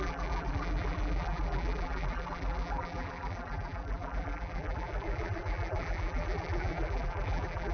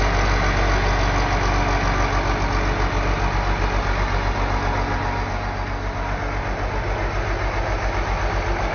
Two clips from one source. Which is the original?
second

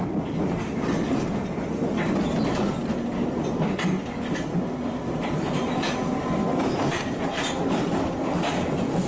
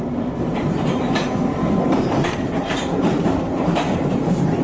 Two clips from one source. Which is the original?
first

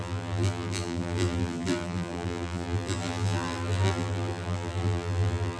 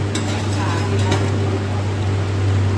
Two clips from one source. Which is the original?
second